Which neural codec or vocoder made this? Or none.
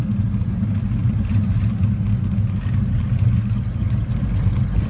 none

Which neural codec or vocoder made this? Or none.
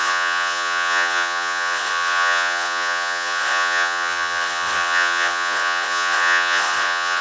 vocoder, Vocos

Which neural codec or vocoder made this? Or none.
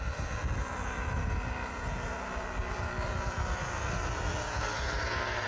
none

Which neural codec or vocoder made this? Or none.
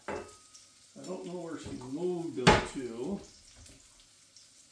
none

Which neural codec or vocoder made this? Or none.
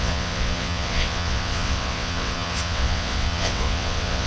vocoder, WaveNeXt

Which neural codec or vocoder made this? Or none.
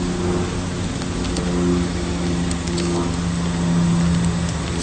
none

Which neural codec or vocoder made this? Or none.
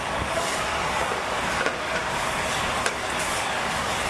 codec, DAC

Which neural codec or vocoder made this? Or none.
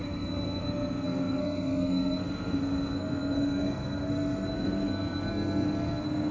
codec, SNAC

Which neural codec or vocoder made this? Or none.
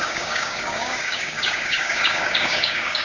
codec, DAC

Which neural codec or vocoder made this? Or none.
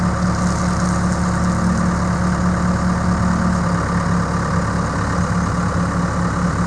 none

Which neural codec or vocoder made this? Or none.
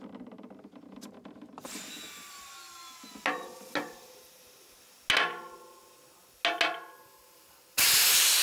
none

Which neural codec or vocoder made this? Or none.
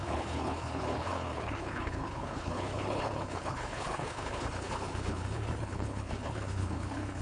codec, HILCodec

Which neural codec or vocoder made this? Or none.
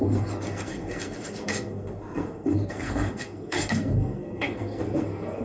codec, SNAC